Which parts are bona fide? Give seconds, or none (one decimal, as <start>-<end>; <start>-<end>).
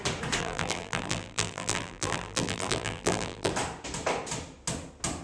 0.0-0.4; 3.5-5.2